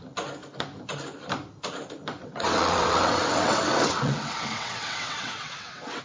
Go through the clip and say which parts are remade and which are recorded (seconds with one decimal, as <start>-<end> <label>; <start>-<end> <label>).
0.0-2.2 recorded; 2.2-6.0 remade